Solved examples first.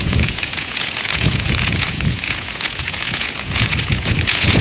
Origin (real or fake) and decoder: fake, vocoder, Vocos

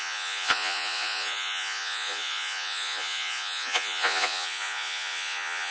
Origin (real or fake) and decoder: fake, vocoder, Vocos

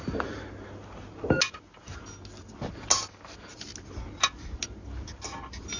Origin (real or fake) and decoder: real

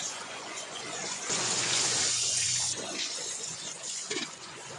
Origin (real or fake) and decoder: fake, vocoder, Vocos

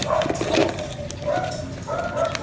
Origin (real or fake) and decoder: real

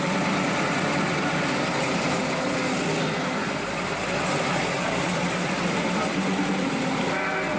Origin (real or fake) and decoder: real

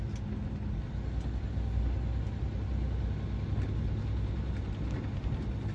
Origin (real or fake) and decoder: real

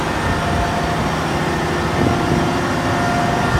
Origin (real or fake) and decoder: real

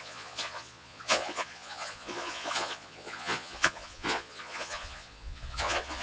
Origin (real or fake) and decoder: fake, vocoder, Vocos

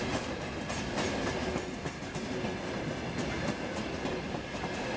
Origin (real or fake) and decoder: real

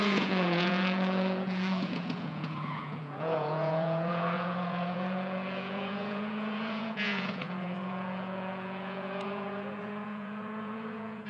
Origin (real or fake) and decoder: fake, vocoder, Vocos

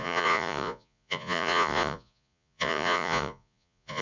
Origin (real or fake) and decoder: fake, vocoder, Vocos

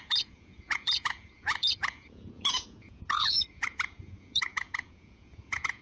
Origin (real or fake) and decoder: fake, vocoder, Vocos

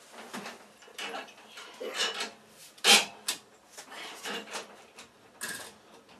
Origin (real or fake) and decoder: real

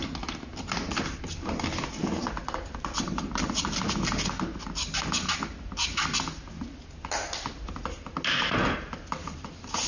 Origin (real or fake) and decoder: real